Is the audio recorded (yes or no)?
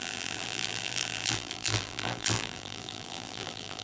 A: no